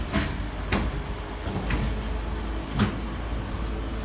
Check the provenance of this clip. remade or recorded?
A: recorded